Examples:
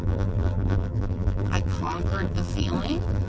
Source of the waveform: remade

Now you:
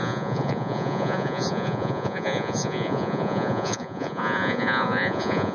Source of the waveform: remade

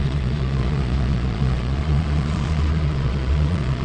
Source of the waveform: remade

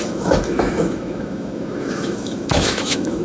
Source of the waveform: remade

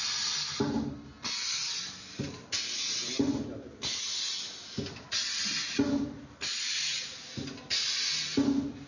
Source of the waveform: recorded